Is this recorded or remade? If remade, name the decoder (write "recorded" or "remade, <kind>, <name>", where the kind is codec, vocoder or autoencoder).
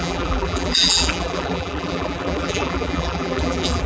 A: remade, vocoder, BigVGAN v2